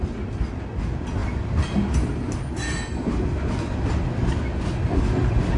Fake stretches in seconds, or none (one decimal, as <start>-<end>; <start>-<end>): none